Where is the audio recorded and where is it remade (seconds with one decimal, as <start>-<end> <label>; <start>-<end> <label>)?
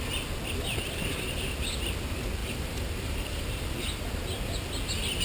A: 0.0-2.4 recorded; 2.4-4.0 remade; 4.0-5.2 recorded